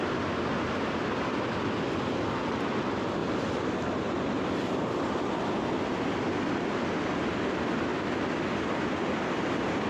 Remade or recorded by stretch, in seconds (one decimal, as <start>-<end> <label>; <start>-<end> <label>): 0.0-9.9 recorded